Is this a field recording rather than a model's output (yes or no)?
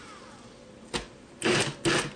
yes